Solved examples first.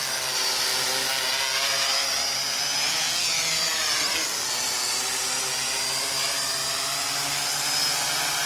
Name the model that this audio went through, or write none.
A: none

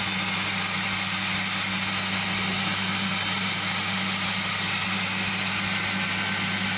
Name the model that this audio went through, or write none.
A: none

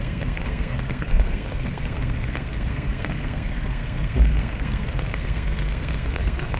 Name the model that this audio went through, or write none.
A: codec, SNAC